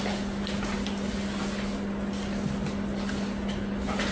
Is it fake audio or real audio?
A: real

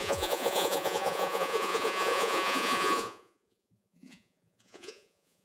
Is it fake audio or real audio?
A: fake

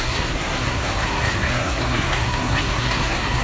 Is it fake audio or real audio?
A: fake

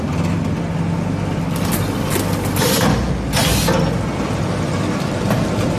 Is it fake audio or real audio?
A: real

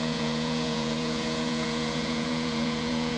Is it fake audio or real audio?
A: fake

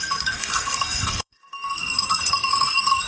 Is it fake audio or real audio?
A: fake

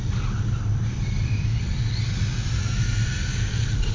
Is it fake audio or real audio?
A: real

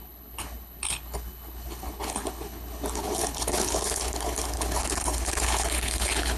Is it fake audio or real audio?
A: fake